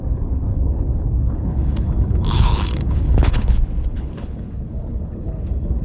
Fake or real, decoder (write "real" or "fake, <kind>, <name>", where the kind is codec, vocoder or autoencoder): fake, codec, HILCodec